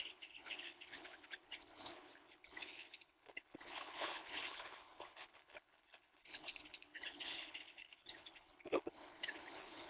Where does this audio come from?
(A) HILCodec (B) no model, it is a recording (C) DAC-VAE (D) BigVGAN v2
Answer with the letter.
A